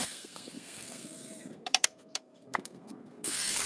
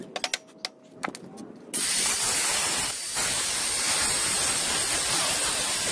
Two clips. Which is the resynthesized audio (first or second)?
first